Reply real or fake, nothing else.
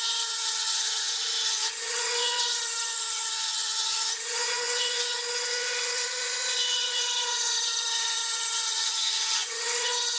fake